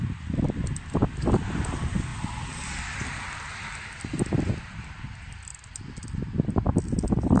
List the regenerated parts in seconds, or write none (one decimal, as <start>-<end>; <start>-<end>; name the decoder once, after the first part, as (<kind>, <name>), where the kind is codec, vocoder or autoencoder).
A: none